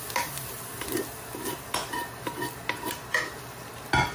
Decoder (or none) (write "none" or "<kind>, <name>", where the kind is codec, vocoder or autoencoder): none